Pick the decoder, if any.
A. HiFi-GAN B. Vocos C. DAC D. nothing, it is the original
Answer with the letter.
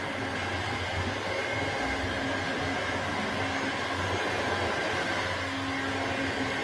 D